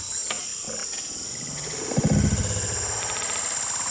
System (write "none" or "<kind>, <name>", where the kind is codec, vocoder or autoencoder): none